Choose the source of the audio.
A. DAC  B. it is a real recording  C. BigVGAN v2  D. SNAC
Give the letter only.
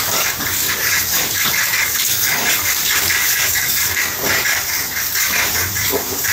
A